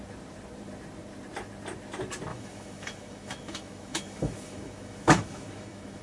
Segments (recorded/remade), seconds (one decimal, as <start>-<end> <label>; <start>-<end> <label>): 0.0-2.3 recorded; 2.3-6.0 remade